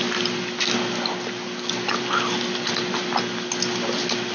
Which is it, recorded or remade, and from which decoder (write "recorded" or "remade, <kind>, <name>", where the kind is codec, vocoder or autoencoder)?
recorded